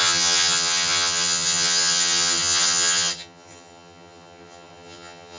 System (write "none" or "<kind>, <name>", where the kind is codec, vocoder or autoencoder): vocoder, HiFi-GAN